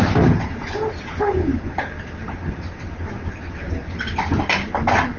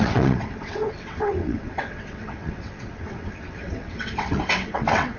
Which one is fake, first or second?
second